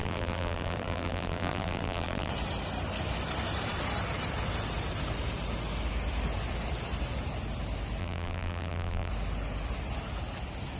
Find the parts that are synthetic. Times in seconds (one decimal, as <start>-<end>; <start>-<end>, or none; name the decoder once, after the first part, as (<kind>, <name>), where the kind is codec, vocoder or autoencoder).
0.0-2.3 (vocoder, BigVGAN v2); 8.0-9.1